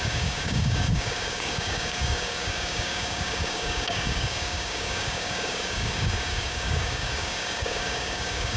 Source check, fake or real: fake